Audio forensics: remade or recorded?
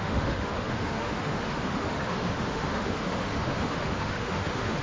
remade